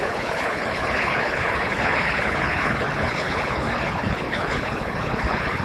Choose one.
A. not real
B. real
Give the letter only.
A